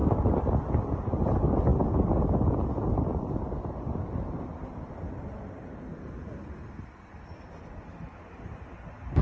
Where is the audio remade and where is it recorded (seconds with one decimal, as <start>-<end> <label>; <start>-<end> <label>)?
0.0-9.2 recorded